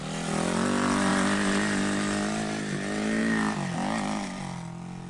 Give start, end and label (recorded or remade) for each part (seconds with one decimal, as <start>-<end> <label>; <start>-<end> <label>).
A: 0.0-5.1 recorded